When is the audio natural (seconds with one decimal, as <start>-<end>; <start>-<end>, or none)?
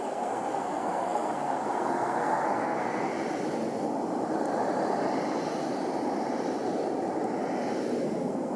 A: 3.1-8.0